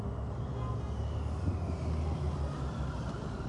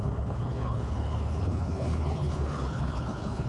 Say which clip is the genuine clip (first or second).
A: first